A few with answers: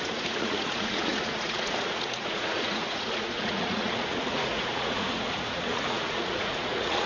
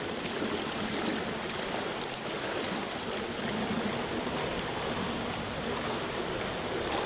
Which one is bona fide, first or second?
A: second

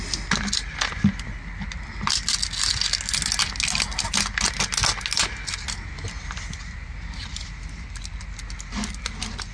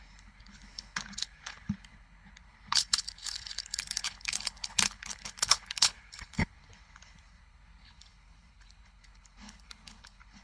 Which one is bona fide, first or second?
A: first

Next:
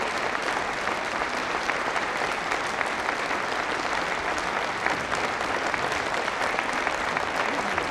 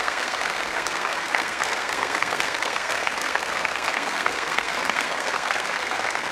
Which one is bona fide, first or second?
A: first